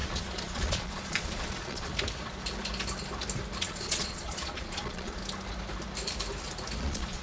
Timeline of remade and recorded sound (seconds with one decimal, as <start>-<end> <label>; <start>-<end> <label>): 0.0-1.9 remade; 1.9-3.6 recorded; 3.6-5.2 remade; 5.2-6.8 recorded; 6.8-7.2 remade